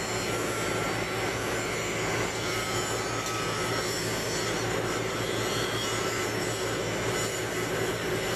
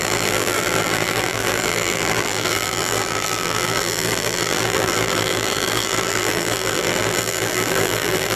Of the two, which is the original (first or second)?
first